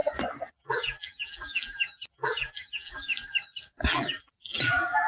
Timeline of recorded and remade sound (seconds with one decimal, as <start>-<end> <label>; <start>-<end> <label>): 0.0-0.5 recorded; 0.5-3.1 remade; 3.1-3.9 recorded; 3.9-5.1 remade